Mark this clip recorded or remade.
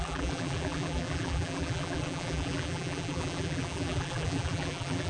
remade